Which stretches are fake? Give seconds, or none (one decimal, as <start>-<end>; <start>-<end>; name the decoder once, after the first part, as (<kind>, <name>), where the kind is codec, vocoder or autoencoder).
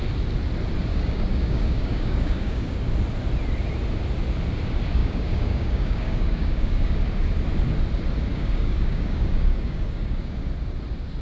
0.9-2.8 (codec, DAC); 5.0-7.0; 8.3-10.5